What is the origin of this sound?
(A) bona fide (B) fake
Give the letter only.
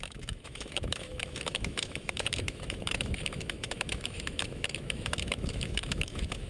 B